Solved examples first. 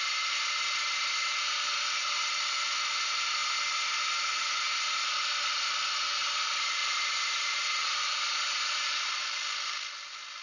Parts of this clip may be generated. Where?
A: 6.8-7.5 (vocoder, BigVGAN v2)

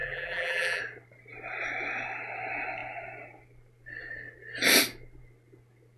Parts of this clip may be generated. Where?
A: 0.0-0.8 (vocoder, BigVGAN v2)

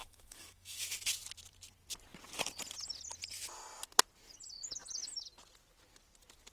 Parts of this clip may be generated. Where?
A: 0.0-0.8 (autoencoder, DAC-VAE)